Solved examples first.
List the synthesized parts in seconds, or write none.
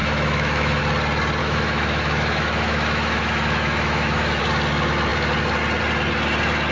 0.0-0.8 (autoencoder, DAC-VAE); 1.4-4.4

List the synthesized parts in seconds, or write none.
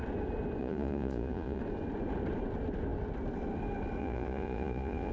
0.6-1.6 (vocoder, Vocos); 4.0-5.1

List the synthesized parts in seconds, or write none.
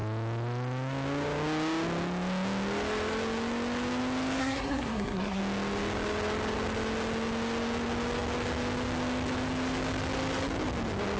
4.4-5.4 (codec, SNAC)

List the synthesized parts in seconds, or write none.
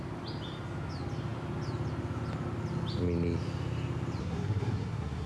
4.2-5.3 (codec, SNAC)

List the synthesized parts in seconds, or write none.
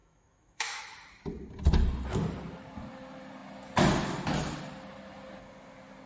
0.0-0.8 (autoencoder, DAC-VAE)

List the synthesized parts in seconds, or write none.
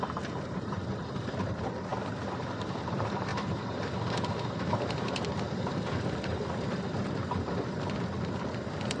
0.0-1.9 (vocoder, BigVGAN v2); 2.7-7.2; 8.4-9.0